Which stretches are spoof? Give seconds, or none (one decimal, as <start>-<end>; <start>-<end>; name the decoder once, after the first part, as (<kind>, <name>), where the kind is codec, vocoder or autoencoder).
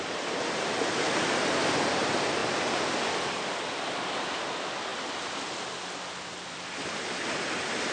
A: none